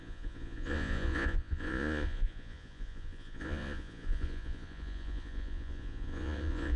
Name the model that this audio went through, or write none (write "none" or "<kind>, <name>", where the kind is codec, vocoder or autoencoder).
vocoder, Vocos